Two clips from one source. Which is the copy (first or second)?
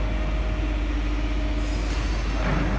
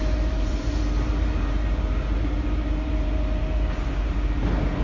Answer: second